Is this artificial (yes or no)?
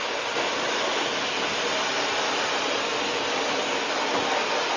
no